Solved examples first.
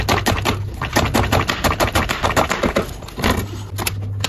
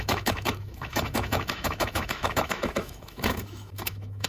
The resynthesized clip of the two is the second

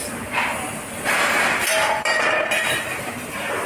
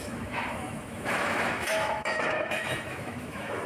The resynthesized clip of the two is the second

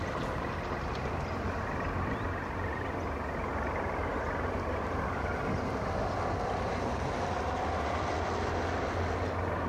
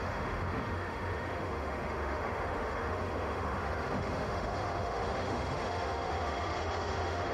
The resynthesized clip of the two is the second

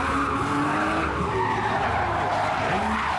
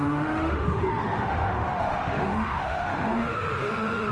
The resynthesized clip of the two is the second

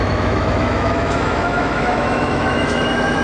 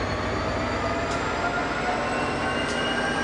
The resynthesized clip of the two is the first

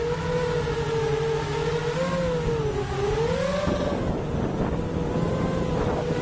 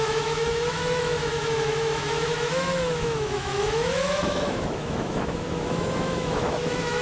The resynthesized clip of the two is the second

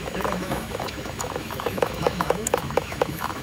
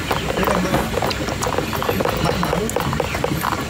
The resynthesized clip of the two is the first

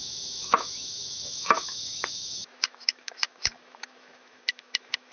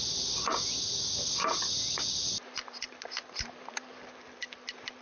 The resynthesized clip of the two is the first